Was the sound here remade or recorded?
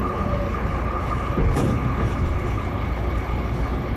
remade